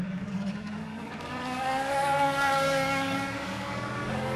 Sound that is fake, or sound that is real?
fake